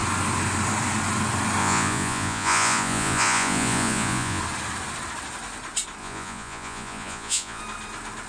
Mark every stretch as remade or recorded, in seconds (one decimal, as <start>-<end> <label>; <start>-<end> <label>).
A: 0.0-1.6 recorded; 1.6-4.4 remade; 4.4-6.0 recorded; 6.0-7.6 remade; 7.6-8.3 recorded